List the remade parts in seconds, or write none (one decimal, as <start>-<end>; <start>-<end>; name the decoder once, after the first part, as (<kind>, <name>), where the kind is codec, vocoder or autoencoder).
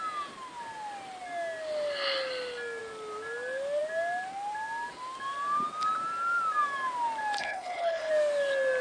7.4-8.1 (codec, HILCodec)